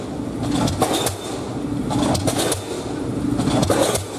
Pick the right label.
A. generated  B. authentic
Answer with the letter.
B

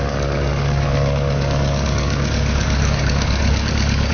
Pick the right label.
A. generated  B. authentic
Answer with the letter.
A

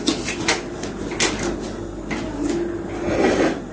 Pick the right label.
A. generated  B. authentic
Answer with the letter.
B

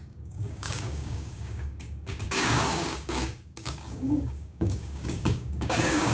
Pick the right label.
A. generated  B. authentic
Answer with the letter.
A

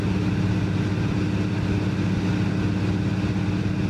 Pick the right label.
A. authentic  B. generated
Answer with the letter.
A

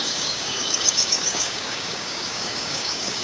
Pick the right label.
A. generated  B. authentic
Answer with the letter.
A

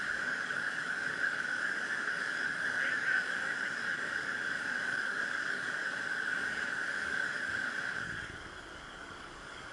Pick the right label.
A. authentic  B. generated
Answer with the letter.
B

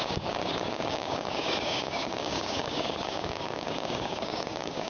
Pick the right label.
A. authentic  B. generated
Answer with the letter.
B